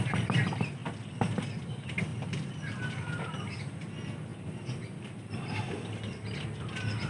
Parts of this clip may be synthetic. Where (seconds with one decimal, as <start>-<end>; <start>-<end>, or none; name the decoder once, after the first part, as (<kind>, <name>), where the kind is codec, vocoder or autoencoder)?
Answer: none